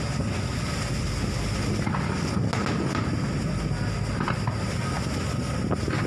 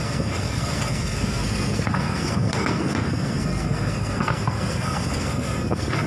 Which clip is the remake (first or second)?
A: second